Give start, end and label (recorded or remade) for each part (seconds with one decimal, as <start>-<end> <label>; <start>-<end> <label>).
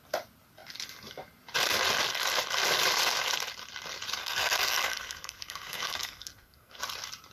0.0-4.2 recorded; 4.2-6.8 remade; 6.8-7.3 recorded